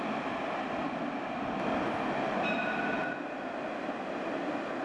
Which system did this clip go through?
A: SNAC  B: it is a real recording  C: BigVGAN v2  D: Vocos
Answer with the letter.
B